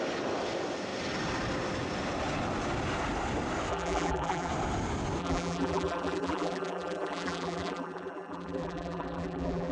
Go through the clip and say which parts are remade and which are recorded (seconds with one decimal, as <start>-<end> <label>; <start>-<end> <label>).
0.0-3.7 recorded; 3.7-4.5 remade; 4.5-5.2 recorded; 5.2-9.7 remade

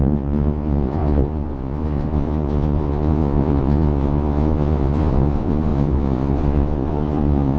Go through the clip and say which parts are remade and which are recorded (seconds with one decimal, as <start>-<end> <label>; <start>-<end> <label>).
0.0-7.6 remade

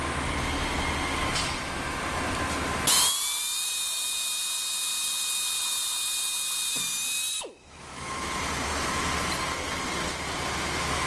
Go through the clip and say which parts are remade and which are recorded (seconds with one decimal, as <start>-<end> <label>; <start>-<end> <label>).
0.0-7.3 recorded; 7.3-8.3 remade; 8.3-11.1 recorded